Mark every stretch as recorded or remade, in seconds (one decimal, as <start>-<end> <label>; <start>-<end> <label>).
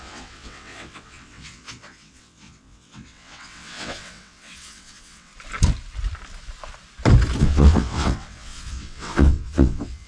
0.0-5.3 remade; 5.3-7.4 recorded; 7.4-10.1 remade